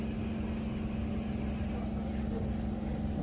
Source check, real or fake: real